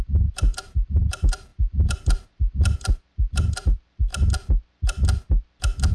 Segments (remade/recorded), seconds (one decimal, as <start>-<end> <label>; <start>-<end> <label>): 0.0-4.1 remade; 4.1-5.9 recorded